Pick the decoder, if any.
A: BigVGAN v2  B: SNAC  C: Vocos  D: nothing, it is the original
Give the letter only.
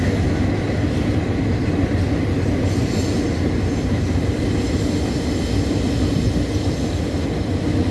D